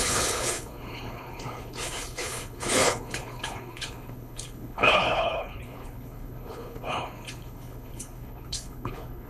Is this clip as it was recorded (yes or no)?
no